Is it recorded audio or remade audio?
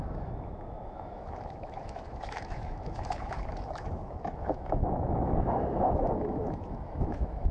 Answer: remade